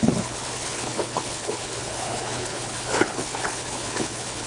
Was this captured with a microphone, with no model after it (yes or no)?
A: no